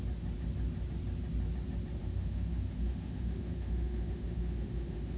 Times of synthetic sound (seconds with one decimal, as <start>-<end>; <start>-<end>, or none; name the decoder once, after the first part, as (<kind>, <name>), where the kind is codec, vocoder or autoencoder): 2.0-5.2 (autoencoder, DAC-VAE)